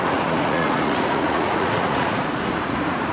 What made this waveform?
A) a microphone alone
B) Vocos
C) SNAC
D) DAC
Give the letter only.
B